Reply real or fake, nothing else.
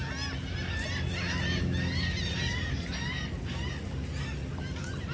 real